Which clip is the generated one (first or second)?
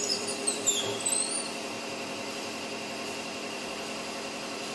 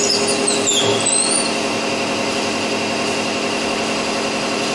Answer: first